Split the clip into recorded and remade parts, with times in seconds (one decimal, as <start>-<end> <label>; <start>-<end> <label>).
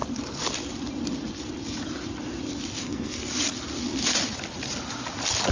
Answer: 0.0-2.8 recorded; 2.8-3.3 remade; 3.3-5.5 recorded